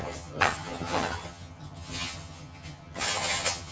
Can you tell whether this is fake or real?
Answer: fake